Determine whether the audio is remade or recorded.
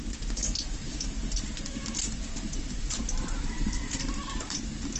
remade